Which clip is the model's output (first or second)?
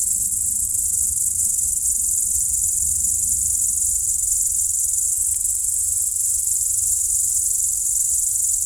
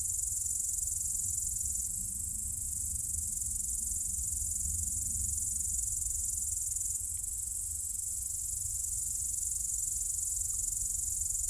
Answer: first